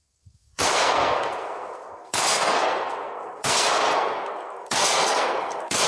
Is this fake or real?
fake